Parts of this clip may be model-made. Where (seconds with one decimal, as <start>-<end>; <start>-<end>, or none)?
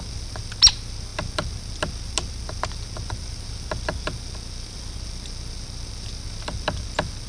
none